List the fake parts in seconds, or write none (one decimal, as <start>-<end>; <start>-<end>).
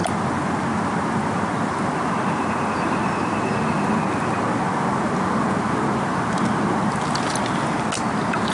none